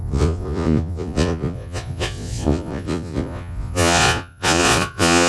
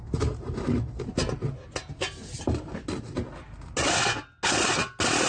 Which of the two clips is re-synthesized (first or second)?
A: first